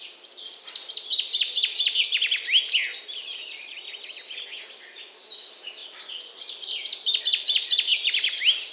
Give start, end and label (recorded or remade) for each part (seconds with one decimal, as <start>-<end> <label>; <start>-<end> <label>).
0.0-5.8 recorded; 5.8-7.2 remade; 7.2-8.7 recorded

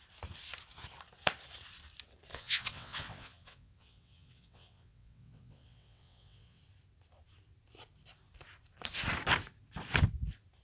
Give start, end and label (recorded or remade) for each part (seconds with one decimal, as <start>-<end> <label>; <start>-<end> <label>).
0.0-2.3 recorded; 2.3-6.6 remade; 6.6-10.6 recorded

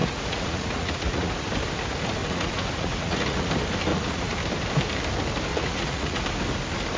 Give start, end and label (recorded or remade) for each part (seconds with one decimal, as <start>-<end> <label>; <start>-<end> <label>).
0.0-1.3 remade; 1.3-2.2 recorded; 2.2-3.5 remade; 3.5-3.9 recorded; 3.9-4.4 remade; 4.4-5.5 recorded; 5.5-6.2 remade; 6.2-7.0 recorded

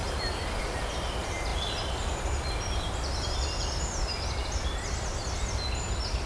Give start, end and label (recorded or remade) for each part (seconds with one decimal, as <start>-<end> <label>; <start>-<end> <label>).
0.0-0.6 remade; 0.6-1.5 recorded; 1.5-4.8 remade; 4.8-6.3 recorded

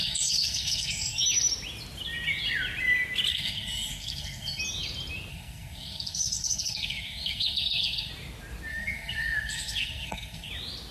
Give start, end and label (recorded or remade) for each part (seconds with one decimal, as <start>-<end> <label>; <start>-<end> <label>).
0.0-1.2 remade; 1.2-3.3 recorded; 3.3-4.6 remade; 4.6-5.3 recorded; 5.3-8.1 remade; 8.1-8.7 recorded; 8.7-10.5 remade; 10.5-10.9 recorded